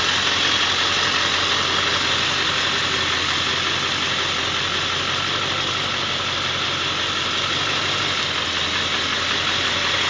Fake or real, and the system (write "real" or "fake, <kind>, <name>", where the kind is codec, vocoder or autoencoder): real